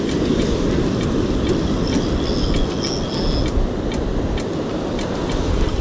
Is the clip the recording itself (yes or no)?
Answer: yes